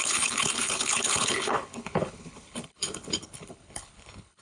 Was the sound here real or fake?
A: fake